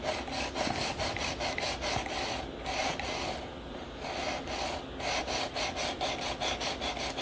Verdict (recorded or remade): recorded